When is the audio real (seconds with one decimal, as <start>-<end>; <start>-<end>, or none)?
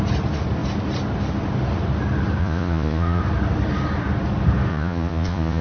0.0-2.4; 3.2-4.7